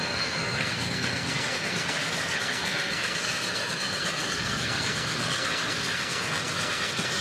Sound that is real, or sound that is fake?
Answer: fake